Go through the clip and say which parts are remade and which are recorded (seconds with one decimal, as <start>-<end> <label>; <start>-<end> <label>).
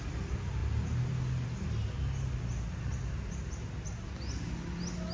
0.0-5.1 recorded